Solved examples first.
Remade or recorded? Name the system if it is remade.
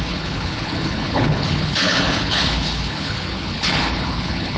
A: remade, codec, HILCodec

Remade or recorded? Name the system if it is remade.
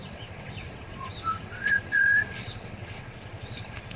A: remade, vocoder, WaveNeXt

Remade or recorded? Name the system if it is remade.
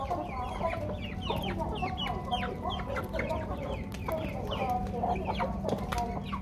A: recorded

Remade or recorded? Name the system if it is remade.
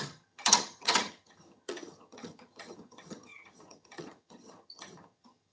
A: remade, vocoder, HiFi-GAN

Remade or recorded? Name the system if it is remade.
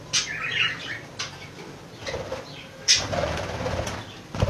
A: recorded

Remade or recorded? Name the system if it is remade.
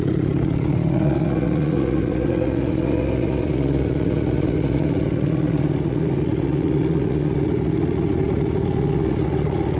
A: remade, vocoder, Vocos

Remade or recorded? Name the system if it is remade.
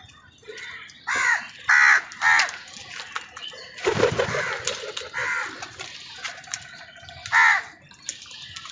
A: recorded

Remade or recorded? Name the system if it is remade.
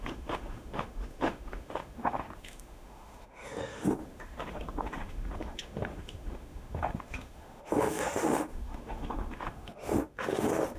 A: remade, autoencoder, DAC-VAE